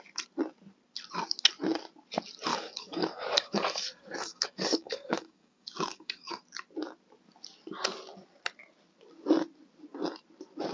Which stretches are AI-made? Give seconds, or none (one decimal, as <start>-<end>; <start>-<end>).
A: 2.5-6.4